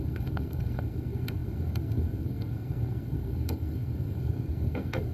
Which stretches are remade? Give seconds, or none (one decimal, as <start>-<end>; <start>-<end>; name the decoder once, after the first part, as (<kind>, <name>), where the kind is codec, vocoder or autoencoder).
0.0-5.1 (codec, SNAC)